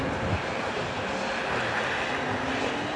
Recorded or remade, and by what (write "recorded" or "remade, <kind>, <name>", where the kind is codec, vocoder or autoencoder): recorded